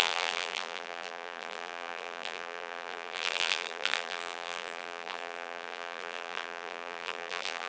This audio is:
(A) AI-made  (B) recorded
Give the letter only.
A